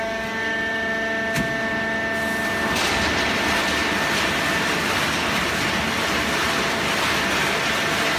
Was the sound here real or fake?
real